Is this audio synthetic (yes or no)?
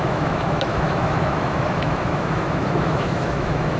yes